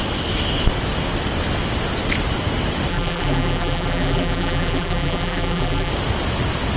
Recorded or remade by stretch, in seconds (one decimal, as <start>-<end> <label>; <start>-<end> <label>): 0.0-2.9 recorded; 2.9-5.9 remade; 5.9-6.8 recorded